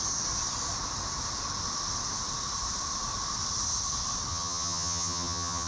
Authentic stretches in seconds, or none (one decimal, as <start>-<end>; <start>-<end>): 0.0-4.3